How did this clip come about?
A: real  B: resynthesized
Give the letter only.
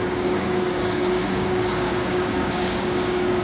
B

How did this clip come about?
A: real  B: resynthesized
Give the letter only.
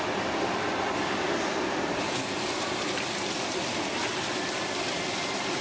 A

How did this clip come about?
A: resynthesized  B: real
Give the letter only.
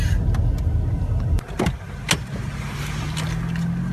B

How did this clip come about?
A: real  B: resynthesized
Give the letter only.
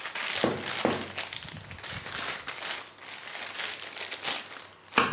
A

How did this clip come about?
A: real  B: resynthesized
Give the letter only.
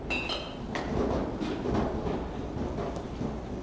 A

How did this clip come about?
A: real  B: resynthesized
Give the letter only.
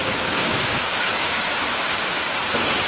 B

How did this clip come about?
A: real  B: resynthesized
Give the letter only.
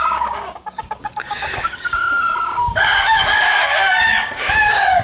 B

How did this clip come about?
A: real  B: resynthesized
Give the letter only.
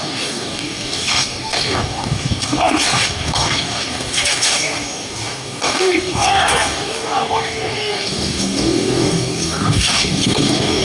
B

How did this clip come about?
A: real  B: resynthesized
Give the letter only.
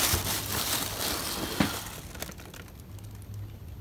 A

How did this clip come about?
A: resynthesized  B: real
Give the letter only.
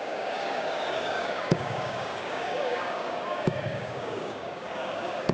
A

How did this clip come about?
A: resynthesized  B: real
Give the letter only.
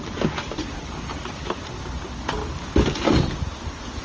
B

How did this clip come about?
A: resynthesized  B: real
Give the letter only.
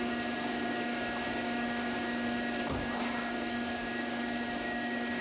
A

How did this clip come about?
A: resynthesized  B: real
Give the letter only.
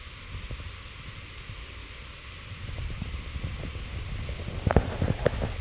B